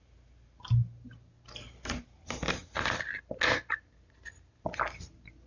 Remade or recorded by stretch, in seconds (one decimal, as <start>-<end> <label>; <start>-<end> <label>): 0.0-5.5 recorded